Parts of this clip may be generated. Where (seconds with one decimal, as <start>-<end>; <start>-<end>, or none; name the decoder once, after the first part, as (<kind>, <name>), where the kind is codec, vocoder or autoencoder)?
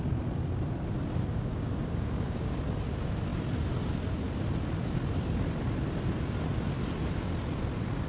1.3-2.6 (codec, DAC)